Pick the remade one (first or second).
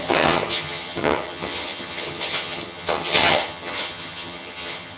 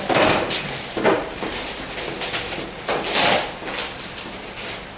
first